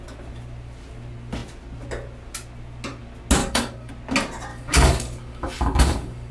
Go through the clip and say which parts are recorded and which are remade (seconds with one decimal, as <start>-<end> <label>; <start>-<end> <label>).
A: 0.0-3.4 recorded; 3.4-3.9 remade; 3.9-4.5 recorded; 4.5-6.3 remade